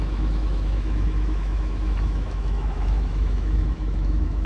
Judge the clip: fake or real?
fake